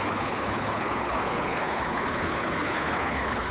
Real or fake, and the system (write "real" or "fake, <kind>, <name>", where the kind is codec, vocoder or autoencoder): fake, codec, HILCodec